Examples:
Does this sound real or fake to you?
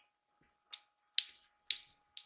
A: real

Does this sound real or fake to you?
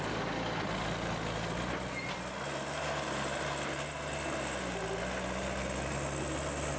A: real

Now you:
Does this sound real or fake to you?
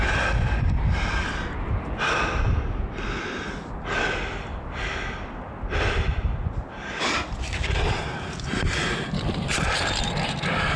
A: real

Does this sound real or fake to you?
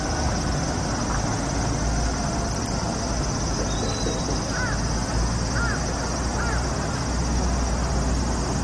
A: real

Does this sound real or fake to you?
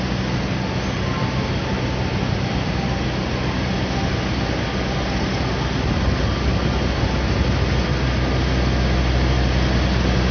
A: real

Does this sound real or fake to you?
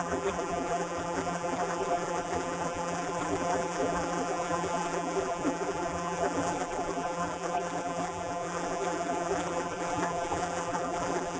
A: fake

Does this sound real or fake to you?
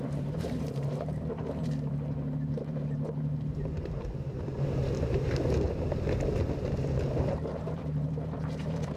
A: fake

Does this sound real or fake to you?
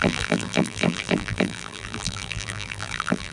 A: fake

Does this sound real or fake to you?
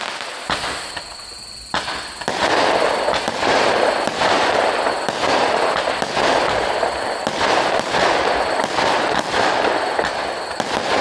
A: real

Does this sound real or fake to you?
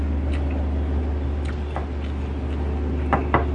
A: real